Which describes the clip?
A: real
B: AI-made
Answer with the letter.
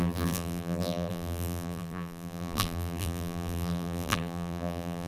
B